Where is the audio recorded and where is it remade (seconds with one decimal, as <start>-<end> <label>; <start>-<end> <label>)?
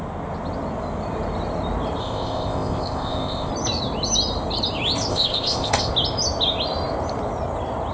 0.0-2.0 recorded; 2.0-3.5 remade; 3.5-5.1 recorded; 5.1-5.9 remade; 5.9-7.9 recorded